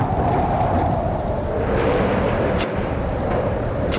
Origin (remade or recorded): recorded